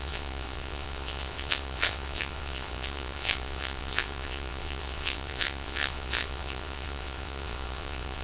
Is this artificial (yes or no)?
yes